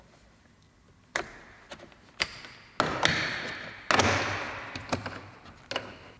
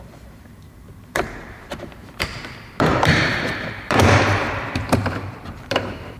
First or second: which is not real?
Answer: second